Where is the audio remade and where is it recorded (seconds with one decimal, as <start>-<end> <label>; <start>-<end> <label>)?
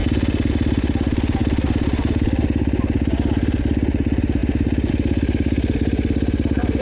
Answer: 0.0-6.8 recorded